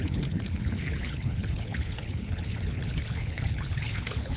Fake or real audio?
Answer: fake